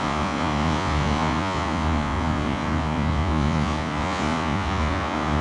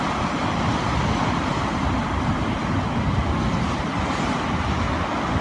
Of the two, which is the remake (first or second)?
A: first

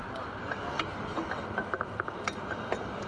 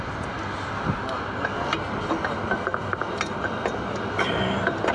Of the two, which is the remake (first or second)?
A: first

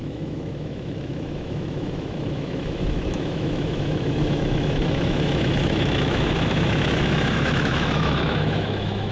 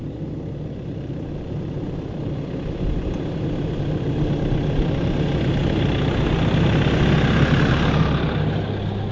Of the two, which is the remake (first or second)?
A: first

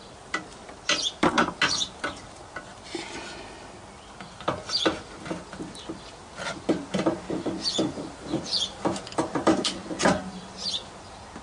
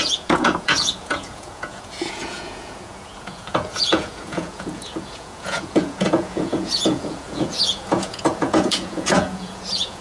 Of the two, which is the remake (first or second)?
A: second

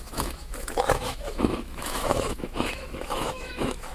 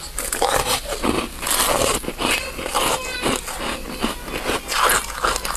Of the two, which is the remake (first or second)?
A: first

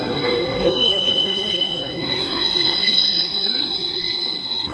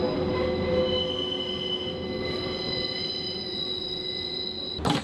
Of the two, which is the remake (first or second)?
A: first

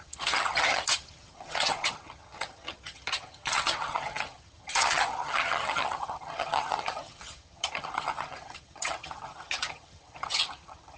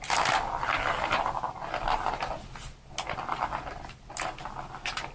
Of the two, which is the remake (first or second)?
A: first